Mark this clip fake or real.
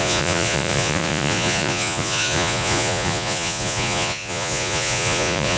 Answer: fake